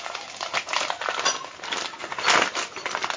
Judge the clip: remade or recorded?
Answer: recorded